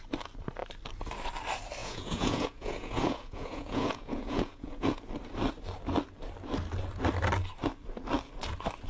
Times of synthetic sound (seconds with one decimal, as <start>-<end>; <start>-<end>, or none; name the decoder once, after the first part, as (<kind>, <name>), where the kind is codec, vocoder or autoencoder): 1.8-5.0 (vocoder, Vocos)